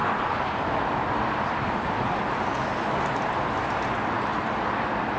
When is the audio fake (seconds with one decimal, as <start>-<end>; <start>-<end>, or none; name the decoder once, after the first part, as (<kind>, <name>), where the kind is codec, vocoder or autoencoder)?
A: none